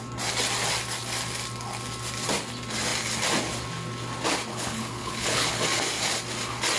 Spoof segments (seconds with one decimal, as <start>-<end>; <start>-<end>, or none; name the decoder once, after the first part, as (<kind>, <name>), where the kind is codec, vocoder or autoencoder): 4.5-5.6 (codec, HILCodec)